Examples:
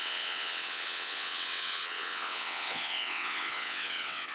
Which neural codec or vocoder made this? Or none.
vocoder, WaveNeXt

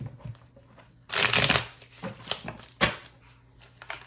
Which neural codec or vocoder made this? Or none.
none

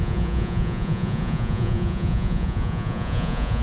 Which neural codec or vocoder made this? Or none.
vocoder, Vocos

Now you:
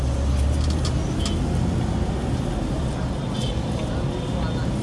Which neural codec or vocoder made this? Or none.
none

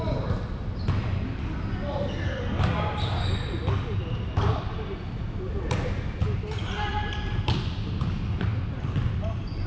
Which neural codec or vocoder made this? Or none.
none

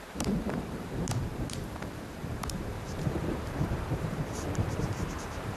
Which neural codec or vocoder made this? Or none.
vocoder, BigVGAN v2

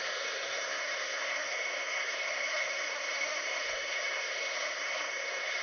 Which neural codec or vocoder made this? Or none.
codec, SNAC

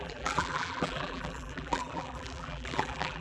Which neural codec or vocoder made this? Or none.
vocoder, BigVGAN v2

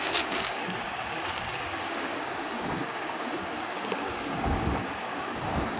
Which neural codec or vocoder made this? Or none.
codec, DAC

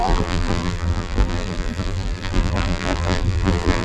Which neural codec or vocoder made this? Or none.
vocoder, BigVGAN v2